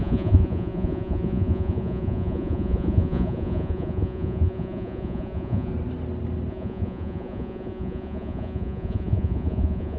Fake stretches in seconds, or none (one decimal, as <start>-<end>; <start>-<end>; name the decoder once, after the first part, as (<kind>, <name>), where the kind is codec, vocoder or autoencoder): 0.0-5.7 (vocoder, Vocos); 6.5-10.0